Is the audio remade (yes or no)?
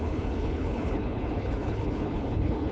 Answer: yes